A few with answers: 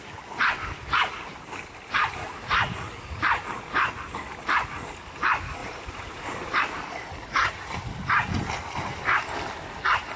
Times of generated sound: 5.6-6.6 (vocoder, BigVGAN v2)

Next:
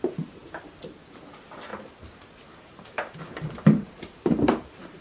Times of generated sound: 1.7-5.0 (vocoder, BigVGAN v2)

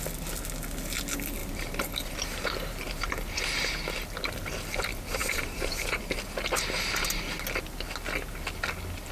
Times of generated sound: 1.4-3.1 (vocoder, BigVGAN v2); 5.2-6.0

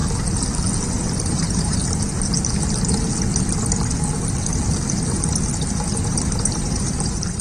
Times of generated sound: 0.9-1.8 (vocoder, BigVGAN v2); 6.1-7.4

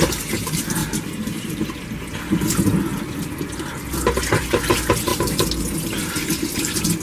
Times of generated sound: 0.8-1.6 (vocoder, BigVGAN v2); 2.9-3.8; 5.1-5.6

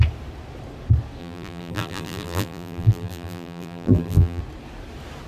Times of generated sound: 1.2-4.4 (vocoder, BigVGAN v2)

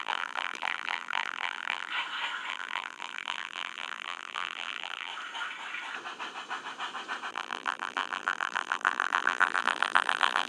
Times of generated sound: 0.0-1.9 (vocoder, BigVGAN v2); 2.5-5.1; 7.3-10.5

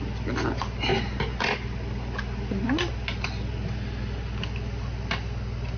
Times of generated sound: none